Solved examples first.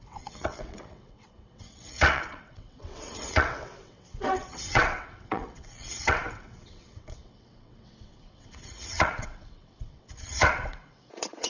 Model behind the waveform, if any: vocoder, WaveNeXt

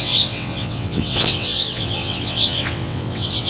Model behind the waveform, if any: vocoder, WaveNeXt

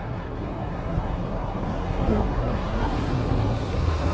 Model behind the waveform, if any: codec, SNAC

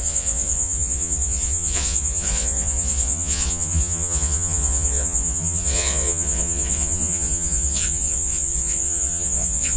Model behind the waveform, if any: vocoder, Vocos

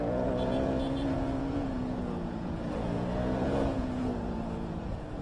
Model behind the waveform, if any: vocoder, Vocos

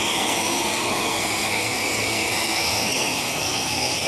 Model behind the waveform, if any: codec, SNAC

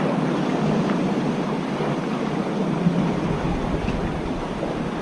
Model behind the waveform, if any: none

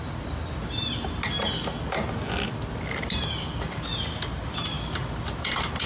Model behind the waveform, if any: none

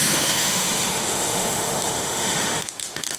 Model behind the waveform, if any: autoencoder, DAC-VAE